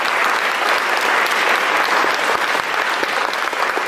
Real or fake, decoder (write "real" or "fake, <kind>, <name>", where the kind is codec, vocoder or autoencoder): real